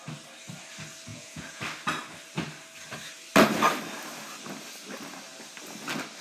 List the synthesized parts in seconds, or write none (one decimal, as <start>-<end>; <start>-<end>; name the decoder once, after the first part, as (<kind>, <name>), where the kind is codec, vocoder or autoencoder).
1.1-1.6 (vocoder, Vocos)